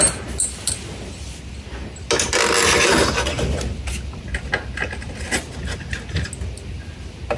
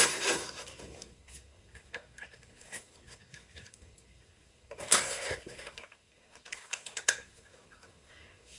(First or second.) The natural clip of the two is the first